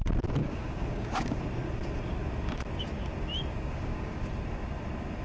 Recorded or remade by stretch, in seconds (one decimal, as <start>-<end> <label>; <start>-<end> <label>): 0.0-0.4 recorded; 0.4-1.4 remade; 1.4-3.5 recorded; 3.5-4.2 remade; 4.2-5.2 recorded